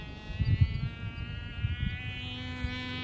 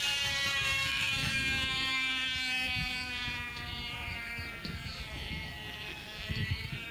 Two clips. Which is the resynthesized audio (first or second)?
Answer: second